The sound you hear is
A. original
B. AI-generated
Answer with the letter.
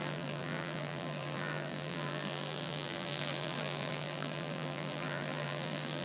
B